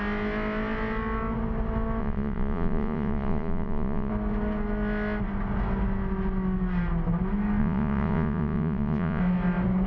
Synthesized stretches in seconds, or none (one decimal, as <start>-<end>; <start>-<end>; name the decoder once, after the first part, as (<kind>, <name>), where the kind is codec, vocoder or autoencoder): 2.0-4.1 (vocoder, Vocos); 7.6-9.2